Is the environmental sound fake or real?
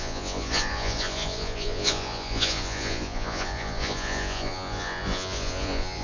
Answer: fake